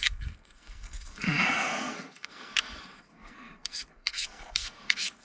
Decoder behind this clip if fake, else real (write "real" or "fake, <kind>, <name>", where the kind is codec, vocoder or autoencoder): fake, codec, SNAC